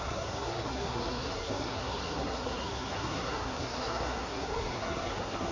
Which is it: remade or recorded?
remade